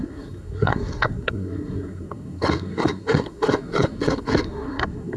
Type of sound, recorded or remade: remade